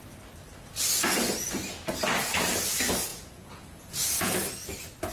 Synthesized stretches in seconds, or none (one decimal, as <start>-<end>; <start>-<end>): 3.1-4.3